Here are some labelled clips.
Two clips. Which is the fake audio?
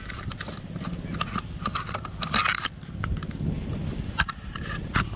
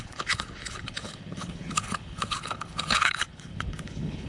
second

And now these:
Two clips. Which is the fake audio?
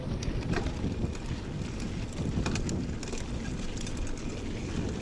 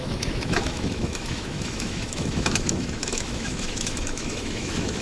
second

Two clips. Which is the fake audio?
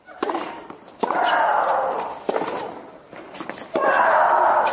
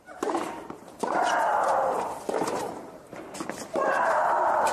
second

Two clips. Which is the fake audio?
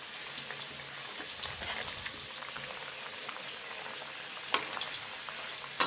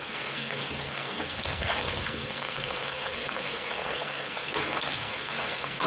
second